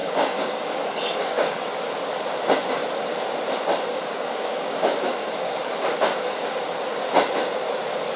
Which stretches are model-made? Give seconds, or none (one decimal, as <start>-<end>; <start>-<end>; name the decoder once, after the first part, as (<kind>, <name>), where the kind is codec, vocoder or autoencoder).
0.0-1.6 (codec, DAC); 3.9-6.6